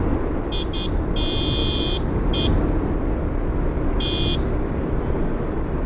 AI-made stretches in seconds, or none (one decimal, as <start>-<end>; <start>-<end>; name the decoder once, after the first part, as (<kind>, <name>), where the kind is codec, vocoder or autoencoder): none